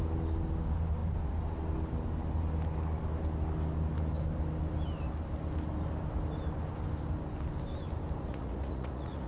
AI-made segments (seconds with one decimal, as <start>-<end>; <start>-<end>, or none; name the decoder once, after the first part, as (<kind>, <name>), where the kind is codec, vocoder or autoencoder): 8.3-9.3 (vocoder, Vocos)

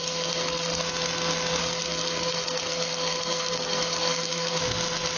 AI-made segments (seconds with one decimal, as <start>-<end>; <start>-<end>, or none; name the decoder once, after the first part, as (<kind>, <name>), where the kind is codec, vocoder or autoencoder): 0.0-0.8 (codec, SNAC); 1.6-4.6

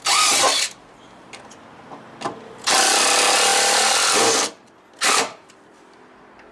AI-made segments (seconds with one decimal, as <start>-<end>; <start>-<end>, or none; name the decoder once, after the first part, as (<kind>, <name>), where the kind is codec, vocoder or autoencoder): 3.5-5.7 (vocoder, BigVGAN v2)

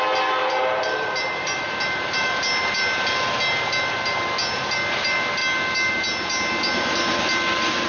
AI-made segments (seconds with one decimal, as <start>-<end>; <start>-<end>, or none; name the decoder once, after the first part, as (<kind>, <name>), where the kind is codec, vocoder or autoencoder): 0.4-2.4 (vocoder, BigVGAN v2)

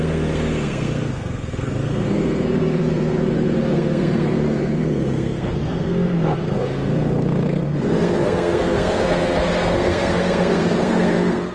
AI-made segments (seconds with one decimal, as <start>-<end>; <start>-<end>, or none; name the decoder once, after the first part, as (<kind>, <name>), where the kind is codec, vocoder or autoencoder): 0.0-11.5 (codec, SNAC)